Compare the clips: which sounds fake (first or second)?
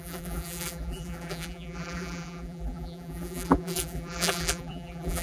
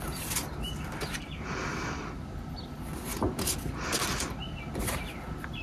first